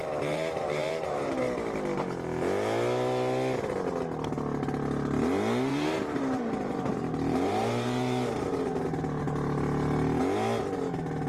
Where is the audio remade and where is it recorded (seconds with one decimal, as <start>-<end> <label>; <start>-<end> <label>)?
0.0-1.4 remade; 1.4-5.7 recorded; 5.7-9.2 remade; 9.2-11.3 recorded